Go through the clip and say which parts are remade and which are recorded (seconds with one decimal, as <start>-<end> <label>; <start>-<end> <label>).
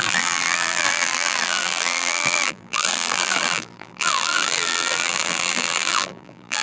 0.0-6.6 remade